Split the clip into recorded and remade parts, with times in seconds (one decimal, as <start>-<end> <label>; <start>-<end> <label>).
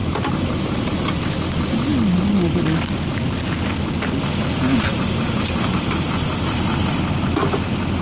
0.0-1.2 remade; 1.2-4.9 recorded; 4.9-6.0 remade; 6.0-8.0 recorded